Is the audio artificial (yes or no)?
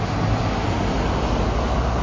no